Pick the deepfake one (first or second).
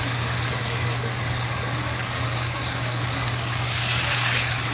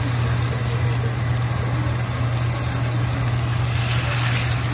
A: first